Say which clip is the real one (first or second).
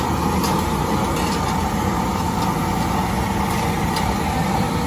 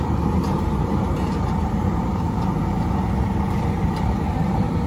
first